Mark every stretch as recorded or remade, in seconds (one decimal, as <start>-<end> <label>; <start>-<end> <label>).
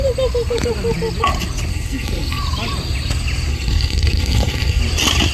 0.0-1.7 recorded; 1.7-2.4 remade; 2.4-3.5 recorded; 3.5-4.8 remade; 4.8-5.3 recorded